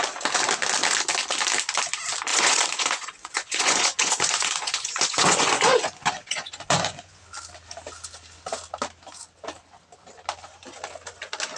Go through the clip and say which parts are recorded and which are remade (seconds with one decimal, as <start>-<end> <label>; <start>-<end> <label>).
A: 0.0-2.3 recorded; 2.3-7.2 remade; 7.2-11.6 recorded